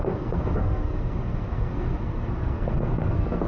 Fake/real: fake